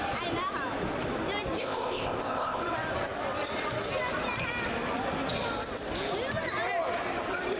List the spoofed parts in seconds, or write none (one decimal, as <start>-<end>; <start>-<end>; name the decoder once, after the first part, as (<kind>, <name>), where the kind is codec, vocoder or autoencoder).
1.6-2.6 (codec, ZipCodec)